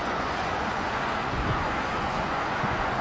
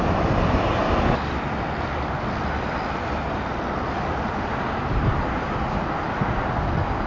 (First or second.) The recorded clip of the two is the second